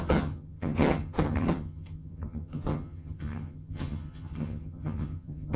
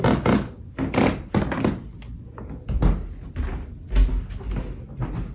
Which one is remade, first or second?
first